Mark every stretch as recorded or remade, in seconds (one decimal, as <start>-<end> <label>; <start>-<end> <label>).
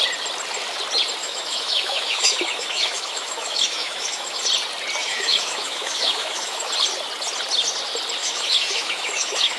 0.0-1.2 recorded; 1.2-4.4 remade; 4.4-5.0 recorded; 5.0-6.7 remade; 6.7-8.2 recorded; 8.2-9.6 remade